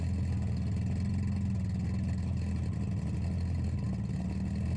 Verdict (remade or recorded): recorded